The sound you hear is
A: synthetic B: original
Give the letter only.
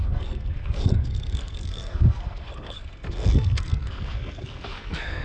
A